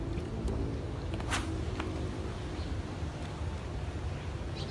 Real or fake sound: real